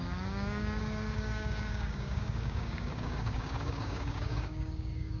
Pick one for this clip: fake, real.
fake